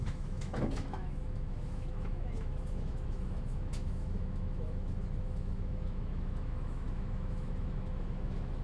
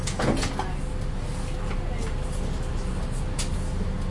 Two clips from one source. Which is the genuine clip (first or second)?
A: second